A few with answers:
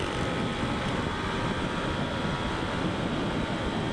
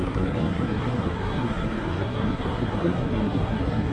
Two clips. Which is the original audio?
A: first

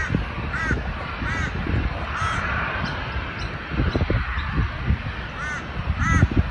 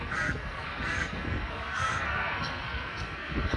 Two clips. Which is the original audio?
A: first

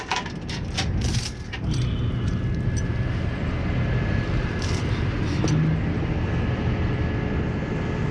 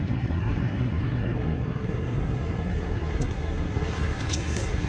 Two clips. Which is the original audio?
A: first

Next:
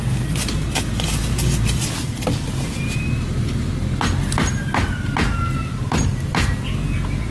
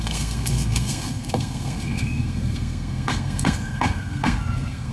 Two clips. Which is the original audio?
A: first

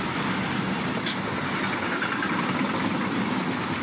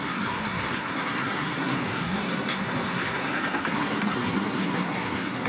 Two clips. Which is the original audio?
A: first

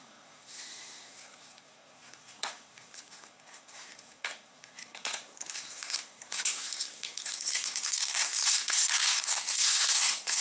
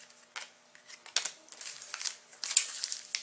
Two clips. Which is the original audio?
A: second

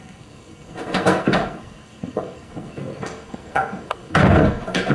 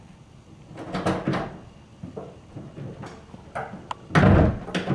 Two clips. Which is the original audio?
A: second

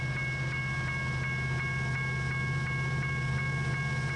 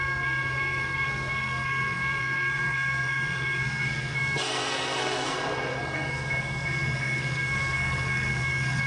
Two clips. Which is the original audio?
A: first